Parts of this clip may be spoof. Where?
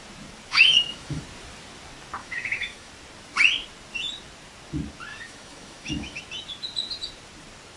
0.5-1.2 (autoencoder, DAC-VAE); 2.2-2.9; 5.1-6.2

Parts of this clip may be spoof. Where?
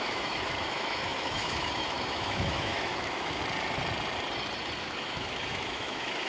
0.0-3.4 (autoencoder, DAC-VAE); 4.8-6.3